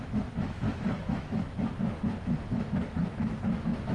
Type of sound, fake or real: fake